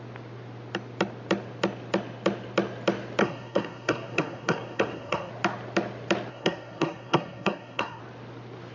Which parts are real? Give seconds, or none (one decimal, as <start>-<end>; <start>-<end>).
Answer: 0.0-3.2; 5.3-6.3; 8.0-8.7